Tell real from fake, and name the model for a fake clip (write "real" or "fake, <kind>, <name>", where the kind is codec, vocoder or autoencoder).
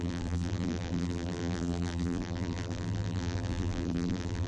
fake, vocoder, BigVGAN v2